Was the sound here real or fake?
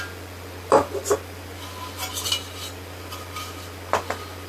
fake